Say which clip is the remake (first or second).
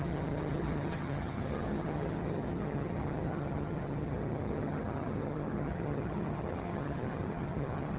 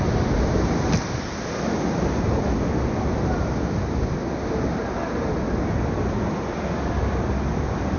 first